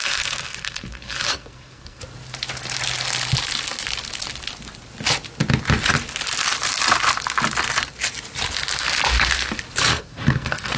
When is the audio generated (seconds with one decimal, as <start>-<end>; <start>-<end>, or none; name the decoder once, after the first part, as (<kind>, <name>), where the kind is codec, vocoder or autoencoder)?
0.0-2.0 (codec, SNAC); 9.9-10.8